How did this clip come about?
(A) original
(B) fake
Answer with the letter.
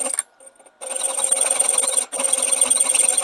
A